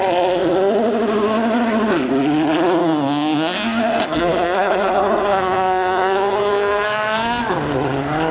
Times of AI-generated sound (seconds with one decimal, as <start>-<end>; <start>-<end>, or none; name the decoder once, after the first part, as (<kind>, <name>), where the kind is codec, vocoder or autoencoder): 2.8-7.4 (codec, SNAC)